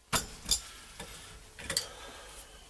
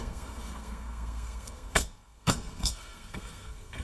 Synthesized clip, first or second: second